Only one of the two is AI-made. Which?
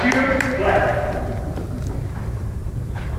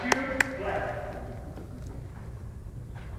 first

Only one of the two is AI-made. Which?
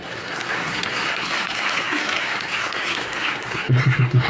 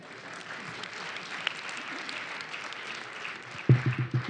first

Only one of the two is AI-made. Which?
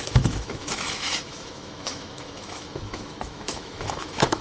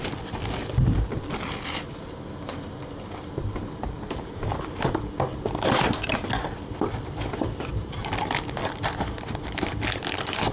first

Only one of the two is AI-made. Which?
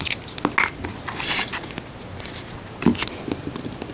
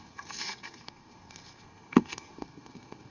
second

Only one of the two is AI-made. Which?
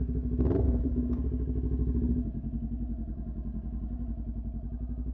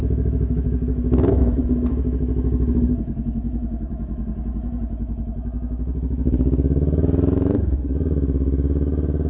second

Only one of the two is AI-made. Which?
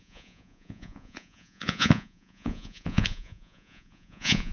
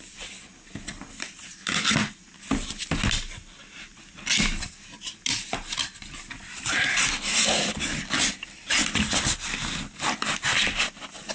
first